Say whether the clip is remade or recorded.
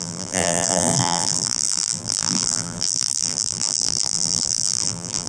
remade